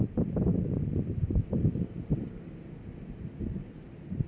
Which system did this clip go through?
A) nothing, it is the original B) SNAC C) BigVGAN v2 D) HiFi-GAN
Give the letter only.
A